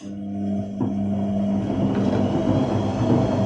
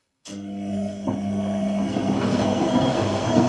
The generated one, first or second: second